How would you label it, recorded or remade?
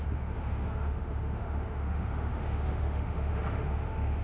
remade